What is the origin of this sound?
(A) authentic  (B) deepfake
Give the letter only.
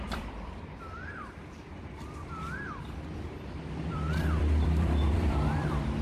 B